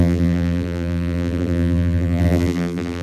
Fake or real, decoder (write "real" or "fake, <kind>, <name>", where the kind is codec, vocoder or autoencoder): fake, vocoder, BigVGAN v2